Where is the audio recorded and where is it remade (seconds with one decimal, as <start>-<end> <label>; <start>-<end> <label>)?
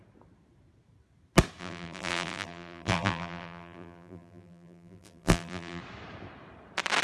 0.0-1.6 recorded; 1.6-5.8 remade; 5.8-7.0 recorded